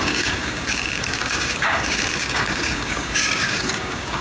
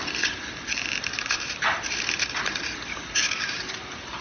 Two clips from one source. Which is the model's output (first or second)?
first